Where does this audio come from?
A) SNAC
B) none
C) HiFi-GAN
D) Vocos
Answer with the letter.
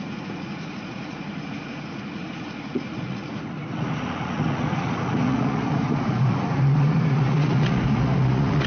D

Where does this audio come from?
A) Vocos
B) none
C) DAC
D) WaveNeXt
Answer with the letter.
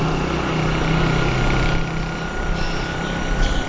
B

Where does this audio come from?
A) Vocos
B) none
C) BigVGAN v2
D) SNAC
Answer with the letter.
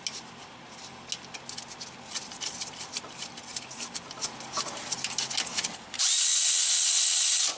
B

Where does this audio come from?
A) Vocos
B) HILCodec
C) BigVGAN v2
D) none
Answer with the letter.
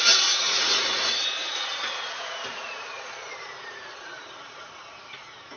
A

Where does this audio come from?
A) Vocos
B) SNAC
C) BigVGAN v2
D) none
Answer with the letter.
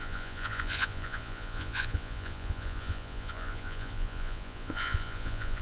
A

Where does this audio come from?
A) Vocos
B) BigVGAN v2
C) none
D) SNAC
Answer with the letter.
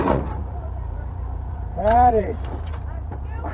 A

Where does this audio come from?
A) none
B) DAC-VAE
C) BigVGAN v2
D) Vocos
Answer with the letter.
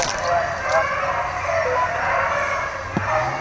A